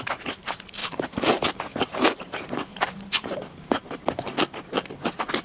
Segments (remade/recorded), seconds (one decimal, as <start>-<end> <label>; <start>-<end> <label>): 0.0-0.8 recorded; 0.8-2.2 remade; 2.2-2.7 recorded; 2.7-3.5 remade; 3.5-5.4 recorded